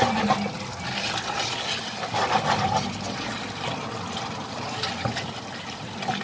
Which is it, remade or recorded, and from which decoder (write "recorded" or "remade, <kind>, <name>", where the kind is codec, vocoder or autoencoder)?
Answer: recorded